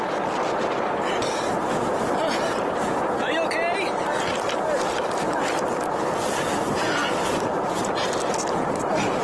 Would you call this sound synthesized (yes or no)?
no